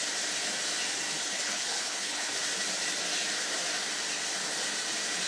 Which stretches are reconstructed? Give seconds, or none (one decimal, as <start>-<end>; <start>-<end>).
1.2-2.3